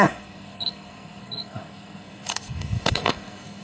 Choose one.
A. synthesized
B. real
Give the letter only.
A